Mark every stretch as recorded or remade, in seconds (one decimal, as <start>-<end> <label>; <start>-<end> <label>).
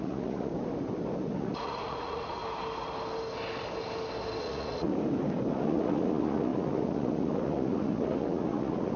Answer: 0.0-0.5 remade; 0.5-1.4 recorded; 1.4-2.4 remade; 2.4-4.4 recorded; 4.4-4.9 remade; 4.9-5.5 recorded; 5.5-9.0 remade